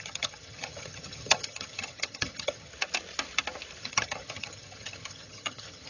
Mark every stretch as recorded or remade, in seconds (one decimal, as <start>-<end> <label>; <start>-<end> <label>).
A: 0.0-2.7 remade; 2.7-3.8 recorded; 3.8-5.9 remade